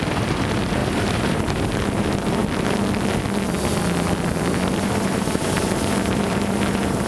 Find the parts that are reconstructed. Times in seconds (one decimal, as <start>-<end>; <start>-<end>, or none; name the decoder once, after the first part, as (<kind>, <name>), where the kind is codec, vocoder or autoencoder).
0.0-2.4 (vocoder, BigVGAN v2); 4.7-7.1